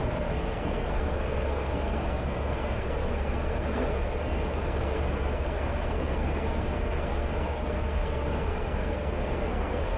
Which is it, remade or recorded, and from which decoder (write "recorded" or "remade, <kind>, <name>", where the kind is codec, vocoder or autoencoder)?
remade, codec, SNAC